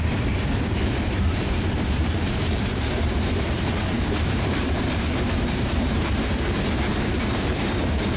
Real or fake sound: fake